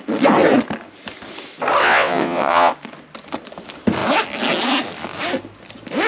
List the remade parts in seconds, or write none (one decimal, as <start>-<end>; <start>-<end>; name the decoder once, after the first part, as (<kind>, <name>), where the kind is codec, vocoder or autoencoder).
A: 1.8-2.7 (vocoder, WaveNeXt)